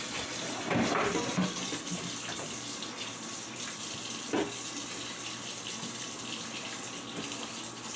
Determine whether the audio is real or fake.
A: fake